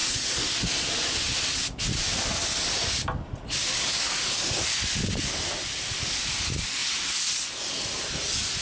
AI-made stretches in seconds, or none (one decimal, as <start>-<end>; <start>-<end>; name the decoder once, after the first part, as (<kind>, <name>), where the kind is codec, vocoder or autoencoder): none